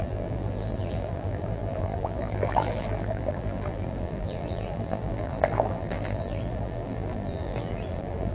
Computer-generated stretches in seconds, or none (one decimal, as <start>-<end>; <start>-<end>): 0.0-8.3